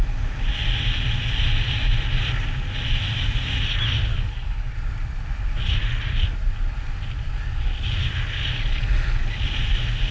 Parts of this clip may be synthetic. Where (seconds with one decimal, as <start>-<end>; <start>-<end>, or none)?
4.1-4.7